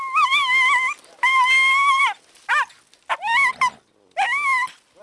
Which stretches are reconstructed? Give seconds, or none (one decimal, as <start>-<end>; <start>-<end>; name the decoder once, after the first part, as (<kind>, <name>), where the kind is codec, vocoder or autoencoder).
none